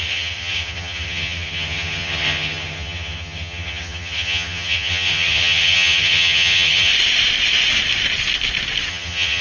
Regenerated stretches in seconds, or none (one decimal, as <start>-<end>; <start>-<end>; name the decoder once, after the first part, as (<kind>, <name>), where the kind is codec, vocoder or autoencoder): 0.0-6.9 (vocoder, HiFi-GAN); 8.9-9.4